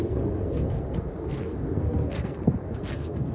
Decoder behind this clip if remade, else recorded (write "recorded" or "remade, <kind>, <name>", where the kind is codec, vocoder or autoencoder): remade, codec, SNAC